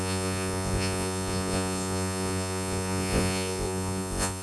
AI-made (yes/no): yes